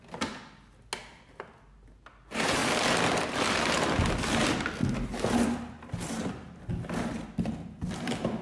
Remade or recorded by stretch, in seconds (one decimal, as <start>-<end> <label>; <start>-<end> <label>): 0.0-8.4 recorded